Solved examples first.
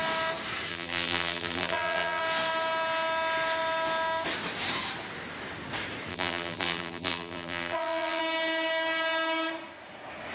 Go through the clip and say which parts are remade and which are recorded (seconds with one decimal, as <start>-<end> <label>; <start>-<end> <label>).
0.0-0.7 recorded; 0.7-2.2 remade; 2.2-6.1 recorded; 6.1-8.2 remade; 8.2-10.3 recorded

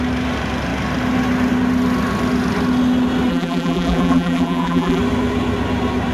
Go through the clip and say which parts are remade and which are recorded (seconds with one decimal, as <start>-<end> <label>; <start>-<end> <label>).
0.0-3.3 recorded; 3.3-5.0 remade; 5.0-6.1 recorded

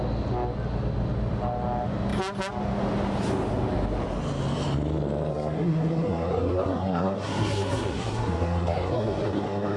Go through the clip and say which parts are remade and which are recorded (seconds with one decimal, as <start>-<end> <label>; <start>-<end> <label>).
0.0-5.3 recorded; 5.3-9.8 remade